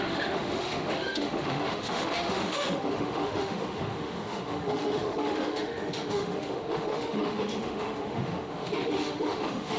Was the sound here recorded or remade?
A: remade